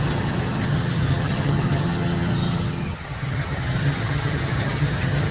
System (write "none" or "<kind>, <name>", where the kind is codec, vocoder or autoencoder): vocoder, HiFi-GAN